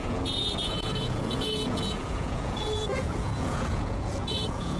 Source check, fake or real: fake